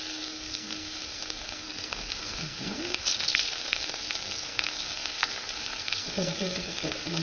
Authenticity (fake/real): fake